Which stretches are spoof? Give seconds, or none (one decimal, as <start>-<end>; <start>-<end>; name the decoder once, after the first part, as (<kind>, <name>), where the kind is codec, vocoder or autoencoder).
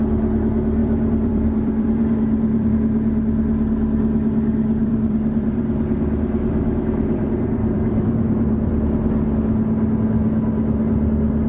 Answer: 0.8-2.7 (vocoder, BigVGAN v2); 4.8-8.8